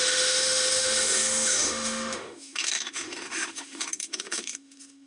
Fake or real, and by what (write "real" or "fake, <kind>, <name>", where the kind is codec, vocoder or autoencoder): fake, autoencoder, DAC-VAE